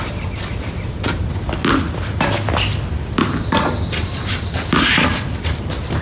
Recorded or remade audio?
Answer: recorded